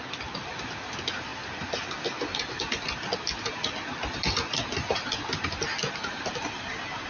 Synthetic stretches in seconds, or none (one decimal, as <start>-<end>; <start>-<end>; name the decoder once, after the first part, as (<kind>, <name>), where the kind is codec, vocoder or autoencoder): none